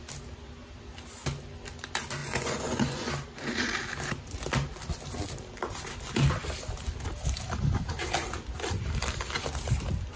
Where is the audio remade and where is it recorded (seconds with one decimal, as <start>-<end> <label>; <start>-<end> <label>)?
0.0-2.2 recorded; 2.2-3.1 remade; 3.1-10.2 recorded

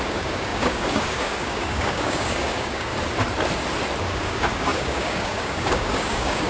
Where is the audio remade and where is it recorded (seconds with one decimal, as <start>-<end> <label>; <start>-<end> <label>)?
0.0-2.9 remade; 2.9-4.0 recorded; 4.0-6.5 remade

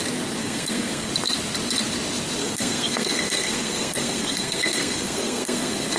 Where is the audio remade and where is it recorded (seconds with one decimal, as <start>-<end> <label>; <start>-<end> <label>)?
0.0-0.4 recorded; 0.4-1.1 remade; 1.1-2.4 recorded; 2.4-6.0 remade

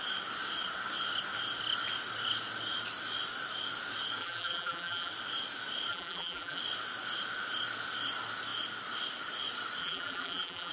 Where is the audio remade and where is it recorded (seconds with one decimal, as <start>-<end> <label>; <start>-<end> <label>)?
0.0-4.2 recorded; 4.2-5.1 remade; 5.1-5.9 recorded; 5.9-6.6 remade; 6.6-9.8 recorded; 9.8-10.7 remade

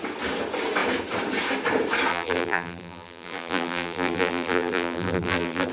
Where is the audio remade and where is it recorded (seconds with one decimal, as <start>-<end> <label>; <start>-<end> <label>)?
0.0-2.1 recorded; 2.1-5.7 remade

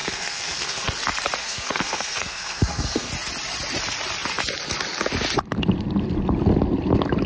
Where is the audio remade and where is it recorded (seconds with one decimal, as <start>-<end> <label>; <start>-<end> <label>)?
0.0-0.9 remade; 0.9-1.4 recorded; 1.4-3.1 remade; 3.1-7.3 recorded

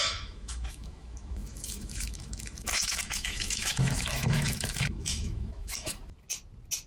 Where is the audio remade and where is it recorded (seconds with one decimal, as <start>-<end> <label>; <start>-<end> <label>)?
0.0-6.0 remade; 6.0-6.9 recorded